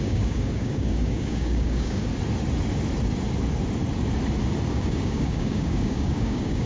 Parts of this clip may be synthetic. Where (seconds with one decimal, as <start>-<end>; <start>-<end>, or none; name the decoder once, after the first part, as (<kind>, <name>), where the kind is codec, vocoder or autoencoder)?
0.0-2.1 (codec, DAC); 4.7-6.7